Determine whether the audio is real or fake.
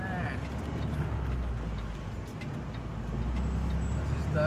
real